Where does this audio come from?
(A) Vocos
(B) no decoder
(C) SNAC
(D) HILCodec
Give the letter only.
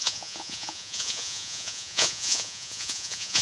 A